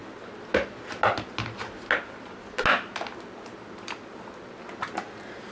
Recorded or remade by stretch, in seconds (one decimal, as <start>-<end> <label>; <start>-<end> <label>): 0.0-5.5 recorded